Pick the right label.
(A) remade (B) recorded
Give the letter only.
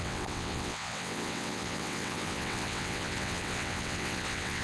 A